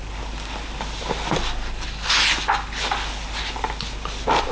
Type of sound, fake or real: real